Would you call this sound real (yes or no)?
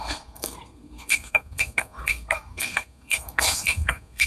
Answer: no